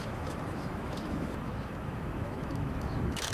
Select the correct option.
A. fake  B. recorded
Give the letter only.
A